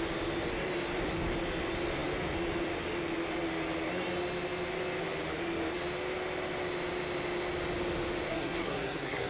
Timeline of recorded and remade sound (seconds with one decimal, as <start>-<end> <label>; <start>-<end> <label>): 0.0-8.3 recorded; 8.3-9.3 remade